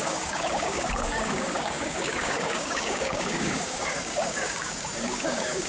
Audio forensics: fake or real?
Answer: fake